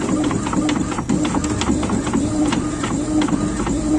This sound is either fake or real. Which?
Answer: fake